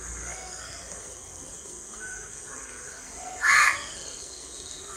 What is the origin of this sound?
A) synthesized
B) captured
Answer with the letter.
A